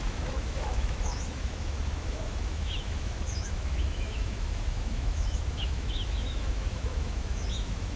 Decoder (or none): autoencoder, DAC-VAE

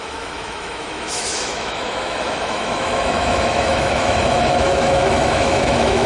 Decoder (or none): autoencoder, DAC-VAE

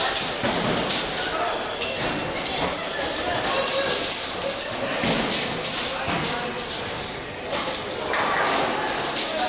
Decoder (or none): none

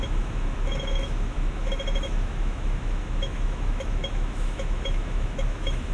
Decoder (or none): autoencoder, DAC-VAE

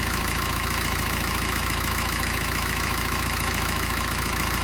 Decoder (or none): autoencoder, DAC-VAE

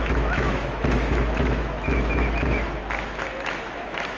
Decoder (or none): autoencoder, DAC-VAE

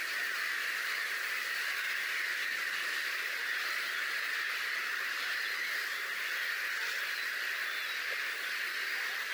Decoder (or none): none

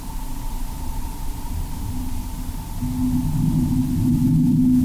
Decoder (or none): none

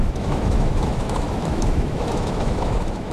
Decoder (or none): autoencoder, DAC-VAE